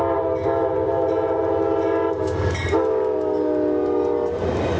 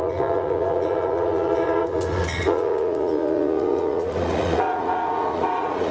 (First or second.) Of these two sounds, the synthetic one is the second